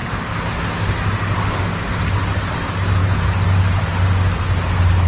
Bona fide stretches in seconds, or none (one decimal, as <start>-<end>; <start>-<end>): 0.0-5.1